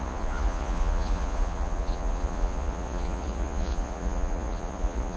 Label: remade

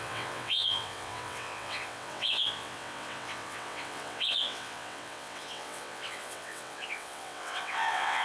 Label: remade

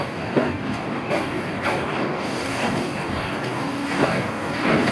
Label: remade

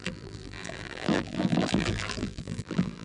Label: remade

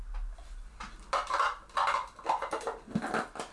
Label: recorded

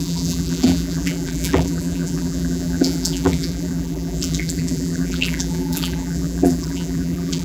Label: remade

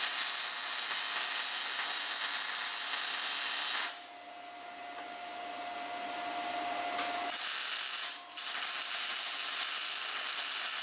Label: recorded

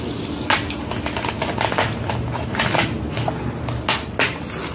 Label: recorded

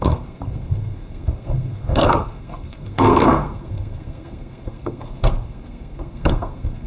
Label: remade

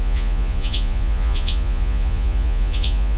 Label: remade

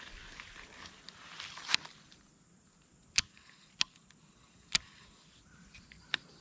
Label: recorded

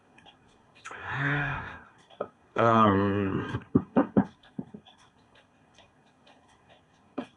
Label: remade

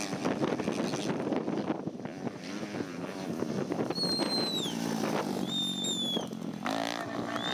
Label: recorded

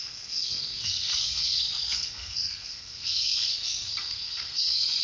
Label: remade